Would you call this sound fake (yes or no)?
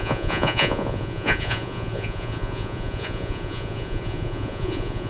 yes